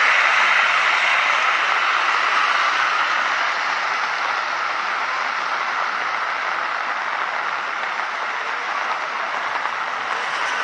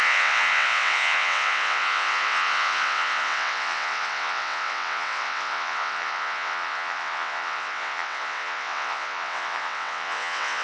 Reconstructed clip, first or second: second